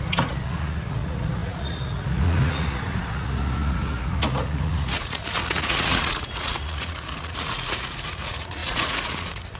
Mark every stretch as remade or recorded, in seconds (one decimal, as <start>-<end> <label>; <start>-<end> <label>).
0.0-9.6 remade